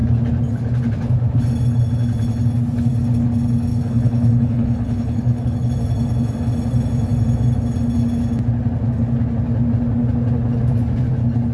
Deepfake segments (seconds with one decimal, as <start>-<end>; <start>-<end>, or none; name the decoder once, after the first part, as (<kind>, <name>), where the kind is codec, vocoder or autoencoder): 3.7-5.7 (codec, HILCodec)